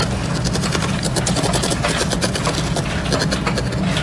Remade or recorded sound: recorded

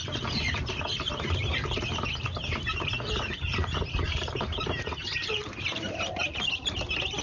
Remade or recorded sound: remade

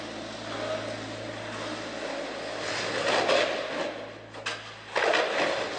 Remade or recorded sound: recorded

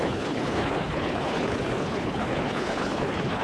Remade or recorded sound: remade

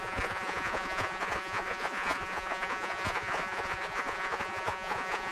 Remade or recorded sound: remade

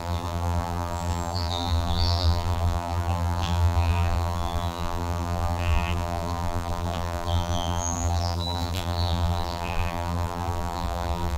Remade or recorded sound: remade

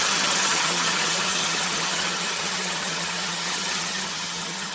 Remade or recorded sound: remade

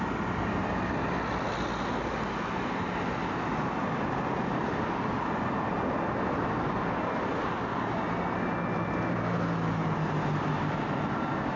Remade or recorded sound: recorded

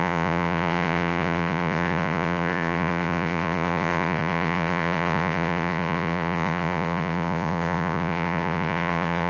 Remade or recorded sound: remade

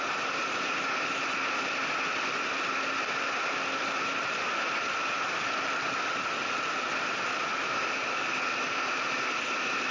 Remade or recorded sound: recorded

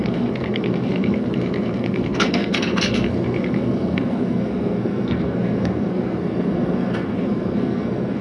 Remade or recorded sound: remade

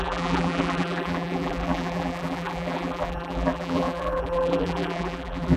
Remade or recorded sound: remade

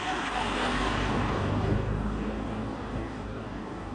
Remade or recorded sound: remade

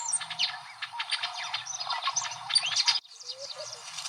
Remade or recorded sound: recorded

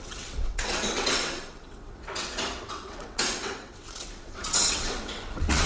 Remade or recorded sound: remade